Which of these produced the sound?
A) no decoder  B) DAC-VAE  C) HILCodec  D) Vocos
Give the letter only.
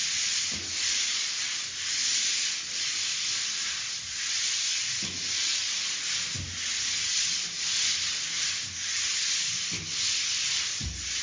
A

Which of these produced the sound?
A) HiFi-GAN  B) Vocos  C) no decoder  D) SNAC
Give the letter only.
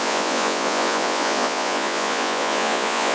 B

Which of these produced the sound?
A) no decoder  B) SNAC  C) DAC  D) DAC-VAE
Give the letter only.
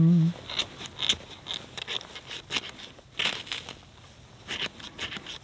A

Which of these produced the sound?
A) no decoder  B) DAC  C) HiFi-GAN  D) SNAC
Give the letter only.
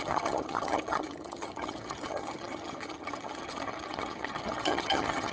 C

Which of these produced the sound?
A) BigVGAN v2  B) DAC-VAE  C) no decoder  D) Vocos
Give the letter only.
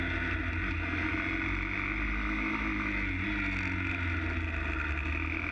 C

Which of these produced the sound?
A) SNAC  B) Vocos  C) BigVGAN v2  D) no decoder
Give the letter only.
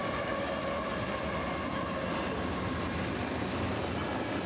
D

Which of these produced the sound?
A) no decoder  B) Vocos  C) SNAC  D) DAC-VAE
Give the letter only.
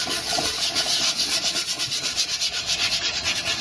B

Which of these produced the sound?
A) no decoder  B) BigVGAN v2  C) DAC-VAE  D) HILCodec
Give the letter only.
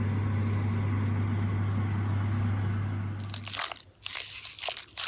A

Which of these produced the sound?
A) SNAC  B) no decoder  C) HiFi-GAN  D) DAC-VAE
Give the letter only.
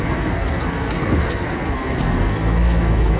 A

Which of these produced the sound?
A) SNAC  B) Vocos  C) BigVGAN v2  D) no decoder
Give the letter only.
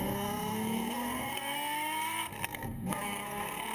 A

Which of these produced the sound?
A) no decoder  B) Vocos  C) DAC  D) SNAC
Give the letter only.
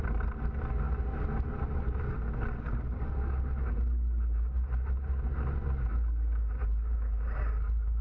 A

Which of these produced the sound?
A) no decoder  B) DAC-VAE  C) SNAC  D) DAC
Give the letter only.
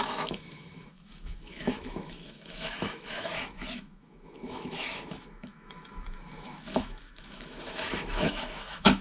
B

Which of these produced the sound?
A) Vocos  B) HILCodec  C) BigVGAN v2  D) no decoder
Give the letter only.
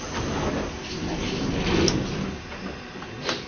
D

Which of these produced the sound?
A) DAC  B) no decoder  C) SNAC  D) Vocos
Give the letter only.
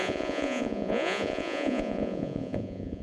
D